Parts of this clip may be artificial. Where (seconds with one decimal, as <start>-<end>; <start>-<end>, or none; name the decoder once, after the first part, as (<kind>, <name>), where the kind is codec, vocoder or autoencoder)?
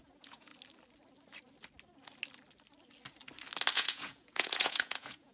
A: 0.0-0.5 (vocoder, Vocos); 3.7-5.3